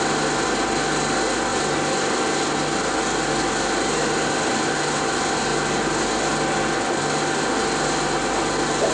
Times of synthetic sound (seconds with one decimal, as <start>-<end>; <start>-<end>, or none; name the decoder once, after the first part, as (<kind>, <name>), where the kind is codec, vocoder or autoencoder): none